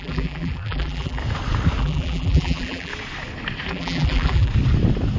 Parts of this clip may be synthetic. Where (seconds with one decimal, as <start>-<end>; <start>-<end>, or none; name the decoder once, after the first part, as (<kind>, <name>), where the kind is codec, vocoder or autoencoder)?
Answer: 0.0-1.2 (vocoder, BigVGAN v2); 1.8-2.9; 3.7-4.5

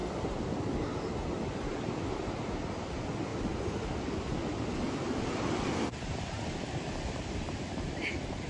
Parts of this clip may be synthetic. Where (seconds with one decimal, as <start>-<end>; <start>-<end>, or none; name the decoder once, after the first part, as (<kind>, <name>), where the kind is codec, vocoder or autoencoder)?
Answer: 2.9-3.3 (vocoder, BigVGAN v2); 5.2-8.5

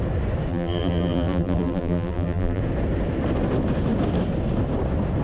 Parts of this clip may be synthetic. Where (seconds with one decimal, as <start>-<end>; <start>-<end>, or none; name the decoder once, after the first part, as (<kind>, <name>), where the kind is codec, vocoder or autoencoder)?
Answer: 0.5-2.6 (vocoder, BigVGAN v2)

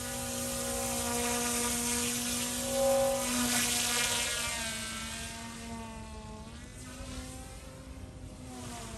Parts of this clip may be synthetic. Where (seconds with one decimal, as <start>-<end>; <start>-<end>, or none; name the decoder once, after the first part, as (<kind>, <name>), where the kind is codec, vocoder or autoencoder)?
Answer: none

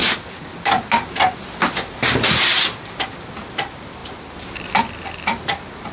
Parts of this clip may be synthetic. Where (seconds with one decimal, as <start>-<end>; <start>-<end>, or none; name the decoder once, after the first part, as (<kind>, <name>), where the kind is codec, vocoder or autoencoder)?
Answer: 0.0-5.9 (vocoder, BigVGAN v2)